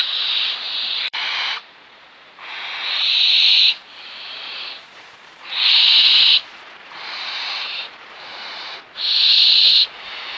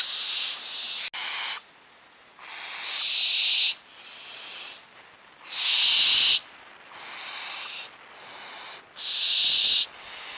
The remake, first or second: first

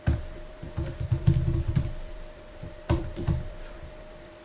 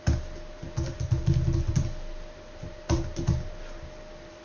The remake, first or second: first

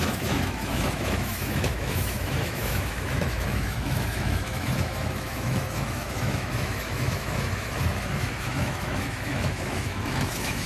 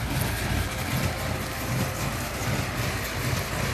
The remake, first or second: first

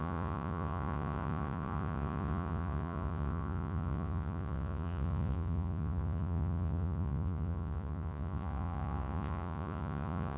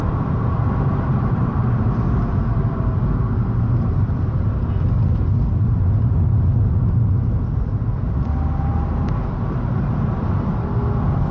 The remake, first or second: first